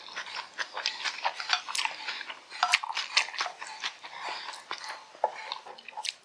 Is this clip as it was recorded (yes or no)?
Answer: yes